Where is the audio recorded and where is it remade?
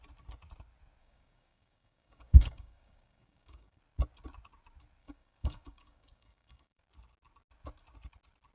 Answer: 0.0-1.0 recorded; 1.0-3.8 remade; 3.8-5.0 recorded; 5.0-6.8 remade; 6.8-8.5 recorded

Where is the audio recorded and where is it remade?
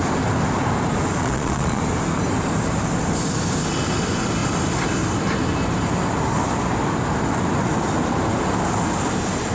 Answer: 0.0-1.2 recorded; 1.2-1.8 remade; 1.8-9.5 recorded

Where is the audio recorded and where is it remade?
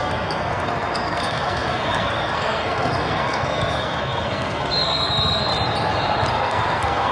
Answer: 0.0-5.5 remade; 5.5-6.3 recorded; 6.3-7.1 remade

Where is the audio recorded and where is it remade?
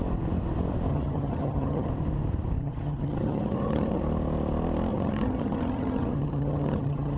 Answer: 0.0-0.9 recorded; 0.9-1.9 remade; 1.9-2.6 recorded; 2.6-4.0 remade; 4.0-4.9 recorded; 4.9-7.2 remade